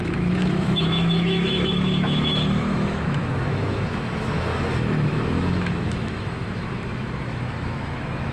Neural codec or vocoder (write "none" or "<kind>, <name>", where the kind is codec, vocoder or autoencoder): autoencoder, DAC-VAE